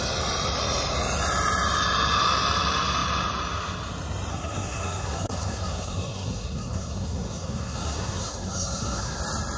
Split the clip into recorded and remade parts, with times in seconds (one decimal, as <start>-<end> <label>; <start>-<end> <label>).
0.0-4.3 recorded; 4.3-9.2 remade; 9.2-9.6 recorded